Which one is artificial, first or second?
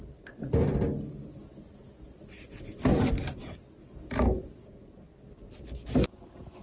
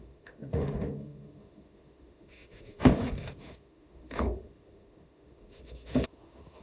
second